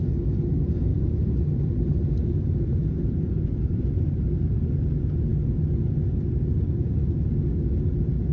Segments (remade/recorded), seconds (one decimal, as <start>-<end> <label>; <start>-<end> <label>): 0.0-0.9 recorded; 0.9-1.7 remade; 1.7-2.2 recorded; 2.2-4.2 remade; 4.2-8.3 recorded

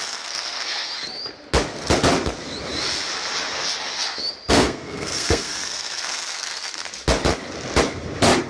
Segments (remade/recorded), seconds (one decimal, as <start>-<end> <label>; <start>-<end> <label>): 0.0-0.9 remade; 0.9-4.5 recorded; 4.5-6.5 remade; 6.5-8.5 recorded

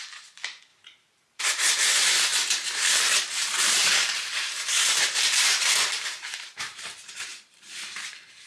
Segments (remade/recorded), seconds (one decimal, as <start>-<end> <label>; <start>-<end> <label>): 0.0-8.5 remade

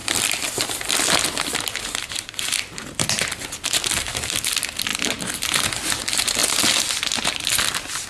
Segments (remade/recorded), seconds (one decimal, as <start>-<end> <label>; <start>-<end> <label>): 0.0-1.0 remade; 1.0-4.9 recorded; 4.9-5.9 remade; 5.9-8.1 recorded

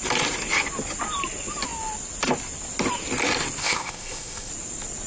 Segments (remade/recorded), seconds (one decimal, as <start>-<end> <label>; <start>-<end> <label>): 0.0-3.6 recorded; 3.6-4.5 remade; 4.5-5.1 recorded

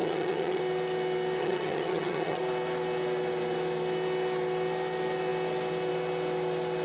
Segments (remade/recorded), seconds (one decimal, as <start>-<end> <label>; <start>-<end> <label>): 0.0-0.6 remade; 0.6-1.4 recorded; 1.4-2.4 remade; 2.4-6.8 recorded

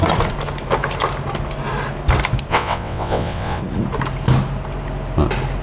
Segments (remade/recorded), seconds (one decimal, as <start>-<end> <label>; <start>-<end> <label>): 0.0-2.5 recorded; 2.5-3.6 remade; 3.6-5.6 recorded

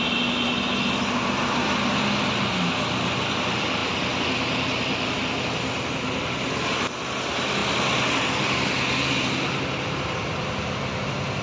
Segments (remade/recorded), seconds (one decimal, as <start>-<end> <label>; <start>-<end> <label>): 0.0-11.4 recorded